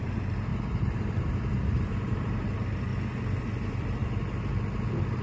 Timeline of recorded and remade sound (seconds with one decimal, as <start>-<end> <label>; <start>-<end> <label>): 0.0-2.9 remade; 2.9-3.4 recorded; 3.4-4.0 remade; 4.0-5.2 recorded